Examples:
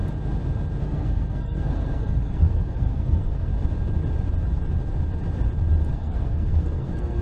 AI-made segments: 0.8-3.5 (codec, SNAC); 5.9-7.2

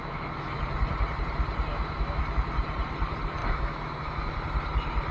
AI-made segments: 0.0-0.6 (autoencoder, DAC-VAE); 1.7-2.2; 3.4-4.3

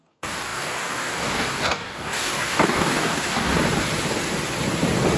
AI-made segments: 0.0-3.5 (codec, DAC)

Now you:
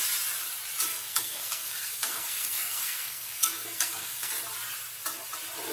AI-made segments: 0.9-4.3 (codec, SNAC)

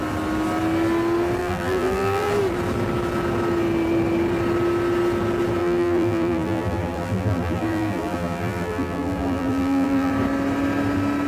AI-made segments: 1.4-2.3 (vocoder, BigVGAN v2); 5.6-10.1

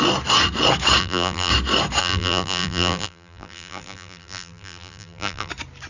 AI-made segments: 1.0-1.5 (vocoder, BigVGAN v2); 2.0-5.5

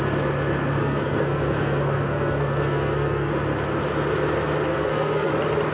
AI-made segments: 0.8-3.3 (codec, SNAC); 4.7-5.3